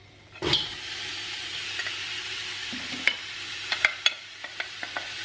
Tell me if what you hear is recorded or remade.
remade